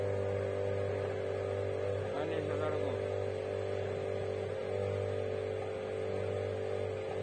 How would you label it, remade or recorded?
recorded